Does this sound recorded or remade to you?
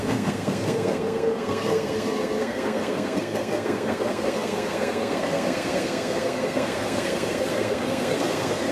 remade